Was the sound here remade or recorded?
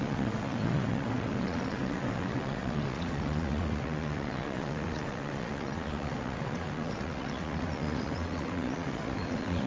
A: remade